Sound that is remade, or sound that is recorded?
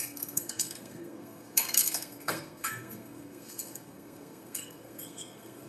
remade